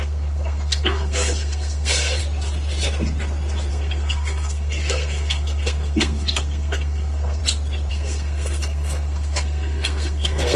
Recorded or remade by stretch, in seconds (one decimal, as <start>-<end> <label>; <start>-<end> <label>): 0.0-2.2 remade; 2.2-3.7 recorded; 3.7-7.4 remade; 7.4-7.9 recorded; 7.9-10.6 remade